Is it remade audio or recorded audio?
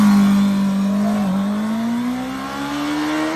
recorded